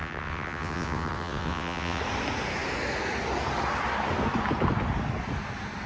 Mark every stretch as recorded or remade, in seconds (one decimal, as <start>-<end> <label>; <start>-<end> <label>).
0.0-2.0 remade; 2.0-5.9 recorded